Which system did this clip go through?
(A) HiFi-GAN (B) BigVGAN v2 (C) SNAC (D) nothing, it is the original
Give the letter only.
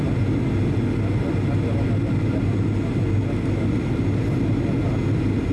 D